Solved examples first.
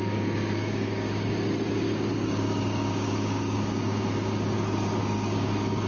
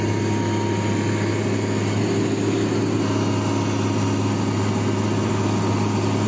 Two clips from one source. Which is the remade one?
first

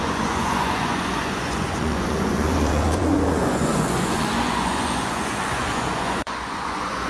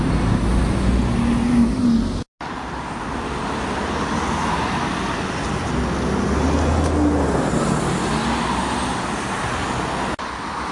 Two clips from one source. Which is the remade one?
first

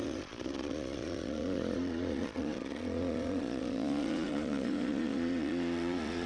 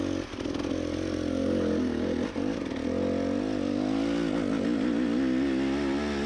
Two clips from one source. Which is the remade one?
first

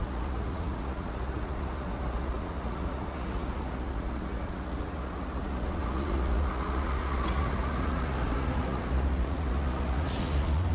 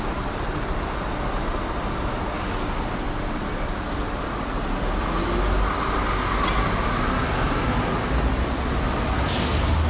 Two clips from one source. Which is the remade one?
first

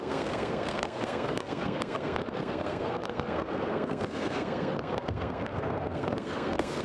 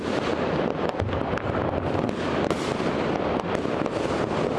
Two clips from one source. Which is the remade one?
first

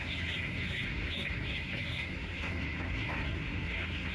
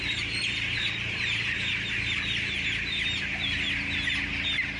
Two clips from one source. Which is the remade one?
first